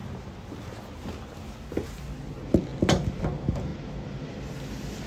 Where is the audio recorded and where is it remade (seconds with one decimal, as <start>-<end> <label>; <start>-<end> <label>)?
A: 0.0-5.1 recorded